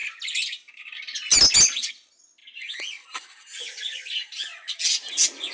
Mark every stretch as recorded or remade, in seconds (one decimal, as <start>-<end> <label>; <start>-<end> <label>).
0.0-5.5 recorded